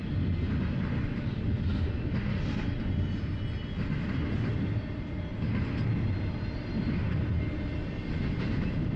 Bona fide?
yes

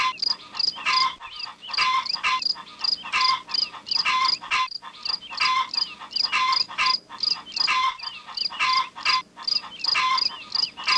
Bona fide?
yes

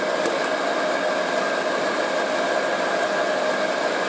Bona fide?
yes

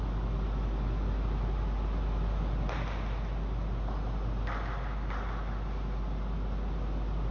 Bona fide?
yes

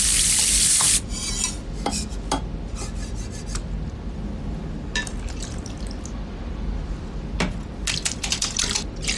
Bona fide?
yes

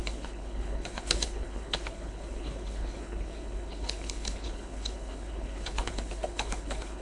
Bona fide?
no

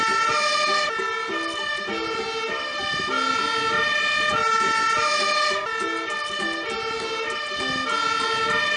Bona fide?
yes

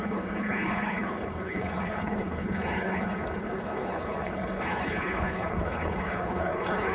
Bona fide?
no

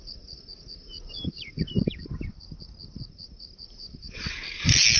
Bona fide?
yes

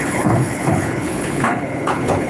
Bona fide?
no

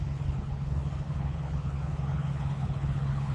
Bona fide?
no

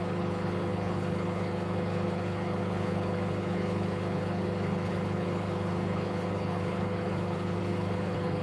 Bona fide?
no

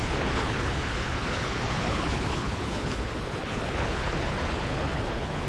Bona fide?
no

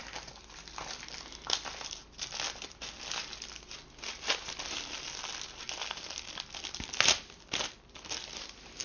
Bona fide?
yes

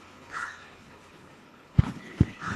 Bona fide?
no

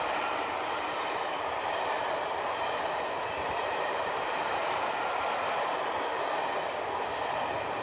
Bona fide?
yes